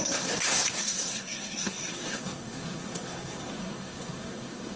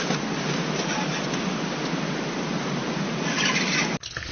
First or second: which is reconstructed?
first